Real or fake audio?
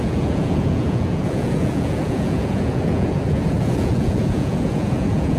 fake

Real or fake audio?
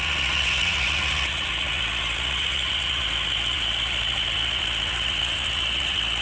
fake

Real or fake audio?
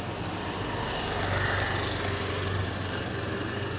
real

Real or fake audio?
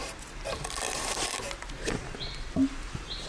real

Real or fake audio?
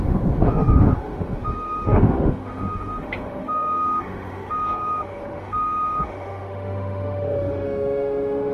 fake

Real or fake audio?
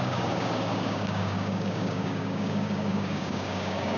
fake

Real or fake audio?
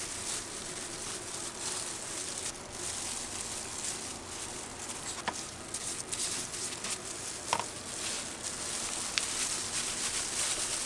real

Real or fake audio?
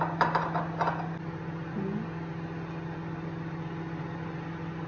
real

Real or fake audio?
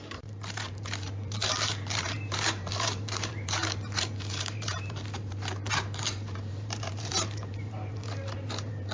fake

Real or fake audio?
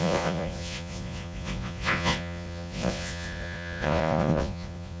fake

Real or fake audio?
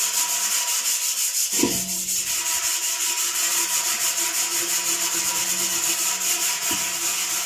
real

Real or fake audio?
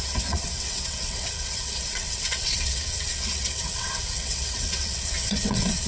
fake